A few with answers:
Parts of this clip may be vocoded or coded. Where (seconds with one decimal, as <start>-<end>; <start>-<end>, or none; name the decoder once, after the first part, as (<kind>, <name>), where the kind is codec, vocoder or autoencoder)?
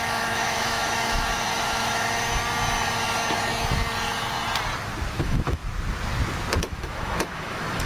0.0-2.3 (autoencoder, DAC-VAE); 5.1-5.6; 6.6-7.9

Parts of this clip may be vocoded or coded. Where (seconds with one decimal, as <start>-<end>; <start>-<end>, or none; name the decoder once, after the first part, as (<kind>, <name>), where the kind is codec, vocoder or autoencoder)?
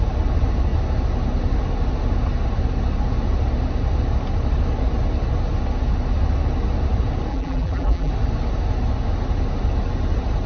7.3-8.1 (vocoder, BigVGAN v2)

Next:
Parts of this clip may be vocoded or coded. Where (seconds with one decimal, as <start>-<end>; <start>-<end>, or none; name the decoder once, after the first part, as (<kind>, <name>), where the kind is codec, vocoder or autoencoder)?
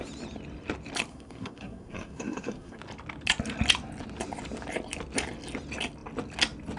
1.1-2.8 (codec, SNAC)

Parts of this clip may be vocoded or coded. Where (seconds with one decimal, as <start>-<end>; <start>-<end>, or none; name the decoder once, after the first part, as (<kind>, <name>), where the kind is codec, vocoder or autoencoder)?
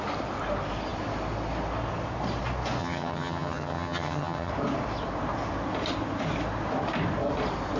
2.8-4.5 (vocoder, HiFi-GAN)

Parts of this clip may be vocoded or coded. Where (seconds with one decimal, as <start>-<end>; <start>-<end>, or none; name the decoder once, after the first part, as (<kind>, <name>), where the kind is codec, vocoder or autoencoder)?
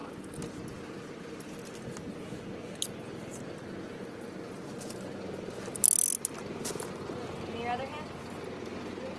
none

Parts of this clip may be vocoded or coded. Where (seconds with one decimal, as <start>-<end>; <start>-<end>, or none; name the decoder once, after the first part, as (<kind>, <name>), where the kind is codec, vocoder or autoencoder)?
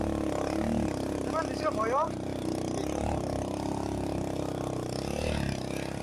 none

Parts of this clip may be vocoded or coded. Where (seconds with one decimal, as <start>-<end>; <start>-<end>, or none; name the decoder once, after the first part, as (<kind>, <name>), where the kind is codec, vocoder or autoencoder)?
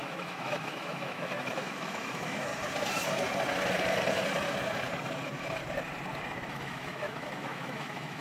0.0-2.5 (autoencoder, DAC-VAE); 6.5-8.2